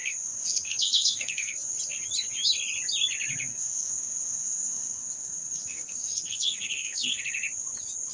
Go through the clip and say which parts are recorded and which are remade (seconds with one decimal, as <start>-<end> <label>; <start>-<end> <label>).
0.0-1.7 remade; 1.7-3.5 recorded; 3.5-7.2 remade; 7.2-8.1 recorded